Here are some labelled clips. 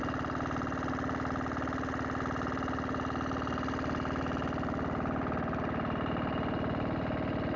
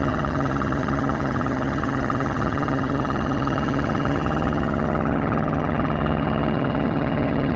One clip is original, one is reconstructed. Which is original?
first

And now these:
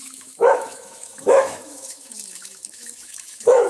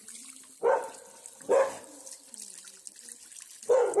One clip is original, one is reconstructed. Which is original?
second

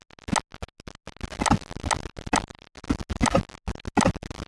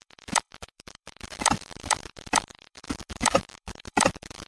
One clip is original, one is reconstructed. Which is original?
first